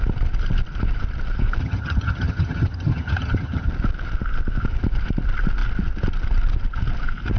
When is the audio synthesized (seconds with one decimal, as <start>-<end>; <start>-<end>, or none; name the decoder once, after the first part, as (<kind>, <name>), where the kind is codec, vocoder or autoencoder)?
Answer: 1.6-3.7 (vocoder, HiFi-GAN)